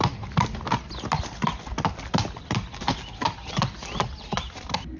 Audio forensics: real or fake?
real